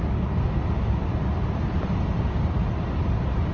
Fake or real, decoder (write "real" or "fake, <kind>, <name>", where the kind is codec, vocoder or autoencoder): real